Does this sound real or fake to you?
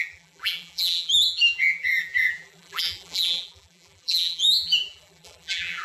fake